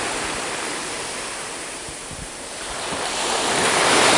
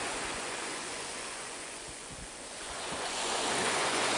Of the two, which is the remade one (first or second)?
second